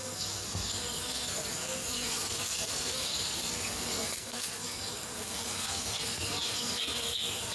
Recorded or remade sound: remade